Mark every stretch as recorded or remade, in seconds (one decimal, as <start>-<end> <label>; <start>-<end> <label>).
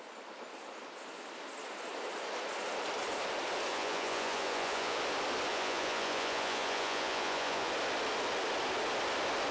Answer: 0.0-3.7 recorded; 3.7-5.0 remade; 5.0-5.5 recorded; 5.5-7.7 remade; 7.7-9.5 recorded